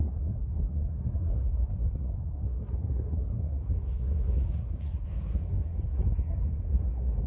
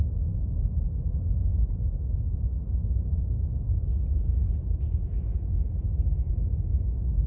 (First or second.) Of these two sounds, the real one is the second